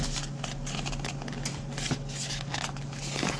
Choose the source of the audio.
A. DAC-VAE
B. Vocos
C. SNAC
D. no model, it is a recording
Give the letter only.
D